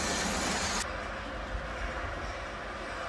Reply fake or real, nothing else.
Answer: real